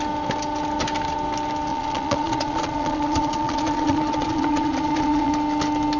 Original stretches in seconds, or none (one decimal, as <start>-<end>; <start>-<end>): 0.0-1.7; 5.3-6.0